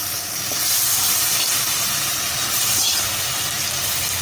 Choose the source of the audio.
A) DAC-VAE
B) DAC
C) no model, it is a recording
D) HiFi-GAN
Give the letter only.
C